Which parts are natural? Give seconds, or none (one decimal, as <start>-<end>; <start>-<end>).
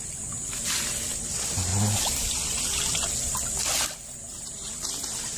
0.0-5.4